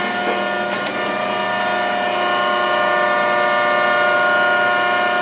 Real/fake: real